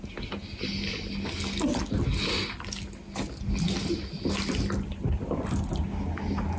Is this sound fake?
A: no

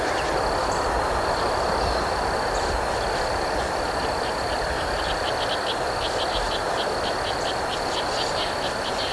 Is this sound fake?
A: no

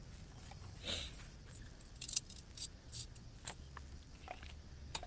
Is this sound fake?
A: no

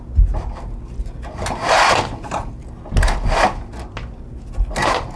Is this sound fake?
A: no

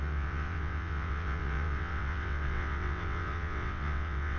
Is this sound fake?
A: yes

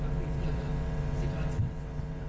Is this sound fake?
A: yes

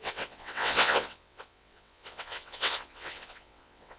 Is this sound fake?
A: yes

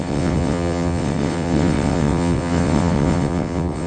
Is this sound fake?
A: yes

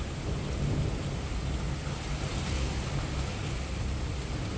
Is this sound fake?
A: no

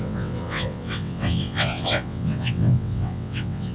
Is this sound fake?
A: yes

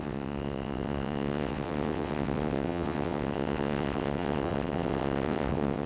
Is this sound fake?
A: yes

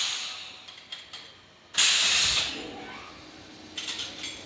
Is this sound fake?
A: no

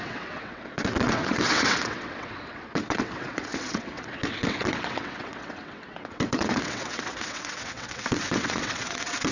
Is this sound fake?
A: yes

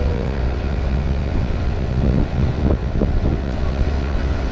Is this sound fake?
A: yes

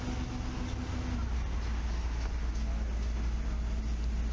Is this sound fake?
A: no